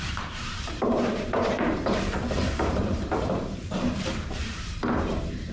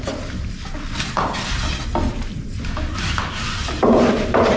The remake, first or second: first